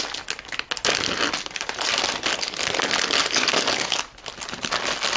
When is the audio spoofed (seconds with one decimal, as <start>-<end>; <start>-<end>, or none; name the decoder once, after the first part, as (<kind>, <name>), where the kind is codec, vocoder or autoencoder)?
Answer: 3.2-4.1 (codec, DAC)